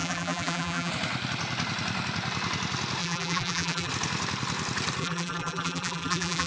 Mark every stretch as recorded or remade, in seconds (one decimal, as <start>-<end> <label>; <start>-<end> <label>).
0.0-0.9 remade; 0.9-3.0 recorded; 3.0-3.9 remade; 3.9-5.0 recorded; 5.0-6.5 remade